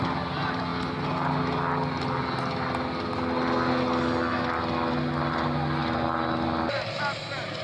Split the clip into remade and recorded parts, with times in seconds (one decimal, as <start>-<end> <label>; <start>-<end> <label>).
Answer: 0.0-7.6 recorded